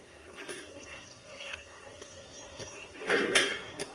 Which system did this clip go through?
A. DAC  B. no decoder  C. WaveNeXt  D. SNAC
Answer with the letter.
D